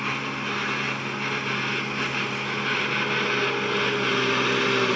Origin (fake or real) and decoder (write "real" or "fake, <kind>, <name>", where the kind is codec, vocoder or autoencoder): real